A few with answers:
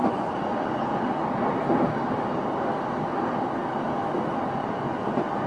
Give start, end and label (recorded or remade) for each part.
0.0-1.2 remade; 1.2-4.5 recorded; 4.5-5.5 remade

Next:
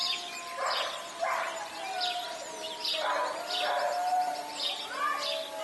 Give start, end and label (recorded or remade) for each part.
0.0-3.4 remade; 3.4-4.5 recorded; 4.5-5.0 remade; 5.0-5.6 recorded

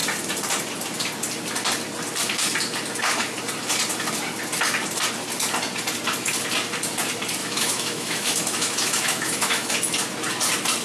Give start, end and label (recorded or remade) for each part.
0.0-7.4 recorded; 7.4-9.7 remade; 9.7-10.8 recorded

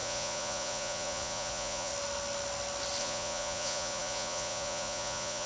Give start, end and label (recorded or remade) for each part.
0.0-1.9 remade; 1.9-3.0 recorded; 3.0-5.5 remade